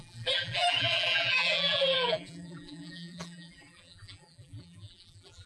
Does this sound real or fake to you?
fake